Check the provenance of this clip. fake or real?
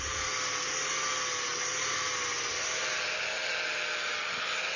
real